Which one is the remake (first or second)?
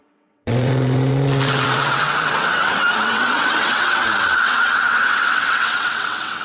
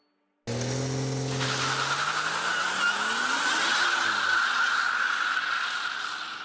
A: first